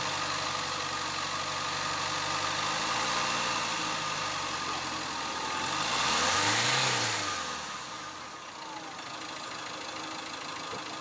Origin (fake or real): real